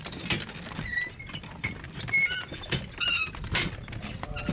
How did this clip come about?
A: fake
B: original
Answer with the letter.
B